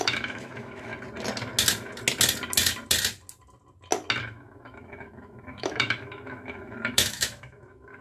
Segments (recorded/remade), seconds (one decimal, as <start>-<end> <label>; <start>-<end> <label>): 0.0-0.9 remade; 0.9-4.2 recorded; 4.2-8.0 remade